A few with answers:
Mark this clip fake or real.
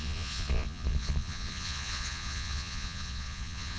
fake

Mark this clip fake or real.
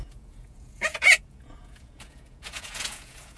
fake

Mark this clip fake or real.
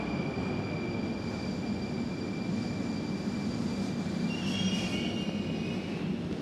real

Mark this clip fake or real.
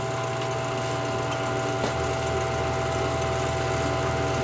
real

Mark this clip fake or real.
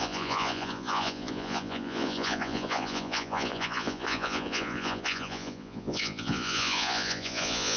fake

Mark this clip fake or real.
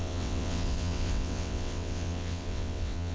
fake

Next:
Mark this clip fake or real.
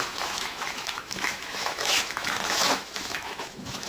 fake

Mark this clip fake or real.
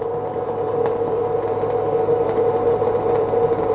real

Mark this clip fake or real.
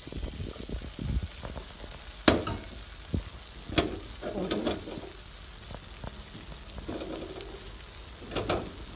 real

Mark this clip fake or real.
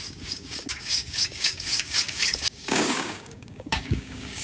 fake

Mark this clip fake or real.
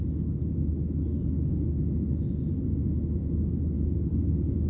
real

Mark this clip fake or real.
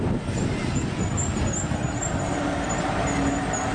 real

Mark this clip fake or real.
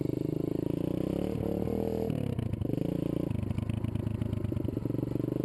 real